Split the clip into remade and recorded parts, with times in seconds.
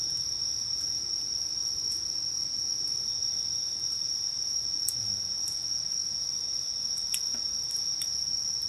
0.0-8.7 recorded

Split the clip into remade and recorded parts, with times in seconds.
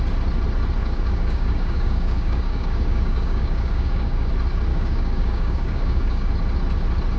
0.0-0.8 recorded; 0.8-4.3 remade; 4.3-4.7 recorded; 4.7-6.3 remade; 6.3-7.2 recorded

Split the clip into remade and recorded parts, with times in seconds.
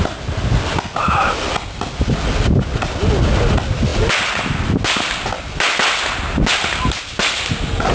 0.0-7.9 recorded